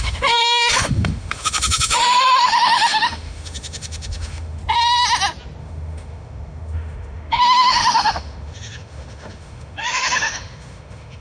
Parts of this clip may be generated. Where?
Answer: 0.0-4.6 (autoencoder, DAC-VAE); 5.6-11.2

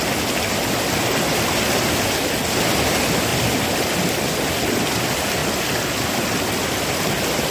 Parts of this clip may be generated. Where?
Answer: none

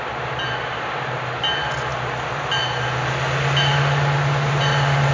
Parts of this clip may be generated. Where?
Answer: none

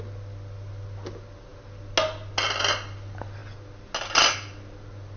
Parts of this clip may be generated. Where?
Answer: none